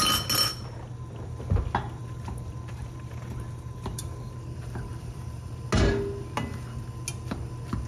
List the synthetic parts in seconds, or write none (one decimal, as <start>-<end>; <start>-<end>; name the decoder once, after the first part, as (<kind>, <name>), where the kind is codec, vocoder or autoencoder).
2.0-5.5 (vocoder, BigVGAN v2)